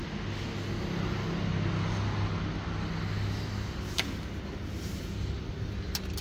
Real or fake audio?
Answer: real